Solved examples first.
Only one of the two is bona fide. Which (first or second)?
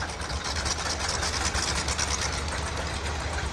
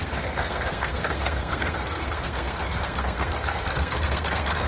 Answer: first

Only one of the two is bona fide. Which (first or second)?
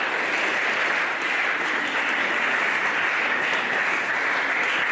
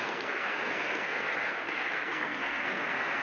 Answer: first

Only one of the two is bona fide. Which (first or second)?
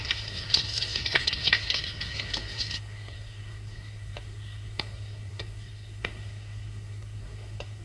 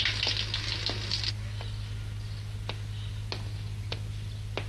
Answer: second